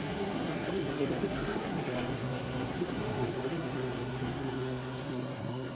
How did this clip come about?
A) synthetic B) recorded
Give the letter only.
A